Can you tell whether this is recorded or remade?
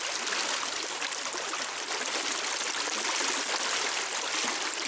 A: recorded